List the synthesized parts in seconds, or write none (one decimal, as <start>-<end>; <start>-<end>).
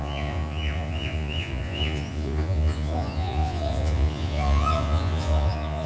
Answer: 0.0-5.9